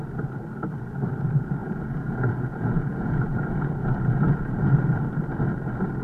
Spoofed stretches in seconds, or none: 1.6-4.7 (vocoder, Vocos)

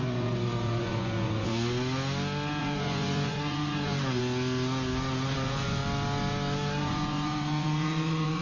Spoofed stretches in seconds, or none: 0.0-1.5 (vocoder, Vocos); 2.6-4.2; 5.3-5.8; 6.8-8.4

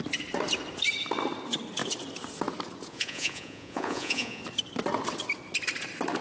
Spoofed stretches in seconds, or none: 2.9-4.4 (vocoder, Vocos)

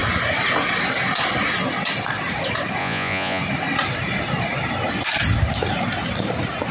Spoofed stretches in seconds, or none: 2.8-3.4 (vocoder, Vocos)

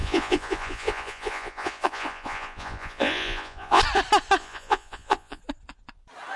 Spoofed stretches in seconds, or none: 0.0-3.8 (vocoder, Vocos); 4.4-5.4

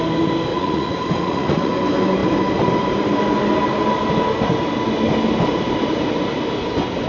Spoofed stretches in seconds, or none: 0.5-1.7 (vocoder, Vocos)

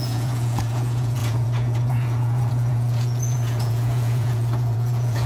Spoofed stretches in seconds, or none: 0.0-5.3 (vocoder, Vocos)

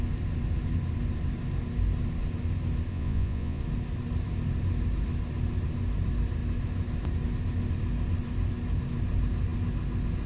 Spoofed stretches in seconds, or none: 2.9-3.6 (vocoder, Vocos)